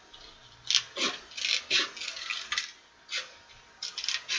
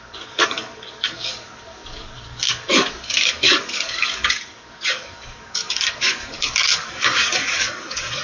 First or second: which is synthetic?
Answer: second